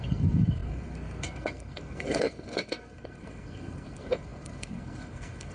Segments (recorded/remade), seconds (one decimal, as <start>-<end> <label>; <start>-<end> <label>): 0.0-5.5 remade